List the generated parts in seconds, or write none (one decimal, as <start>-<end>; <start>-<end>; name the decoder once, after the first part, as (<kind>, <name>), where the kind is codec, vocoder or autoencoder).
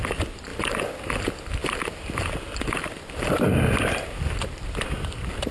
none